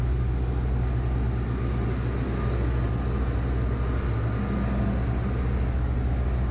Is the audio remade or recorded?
recorded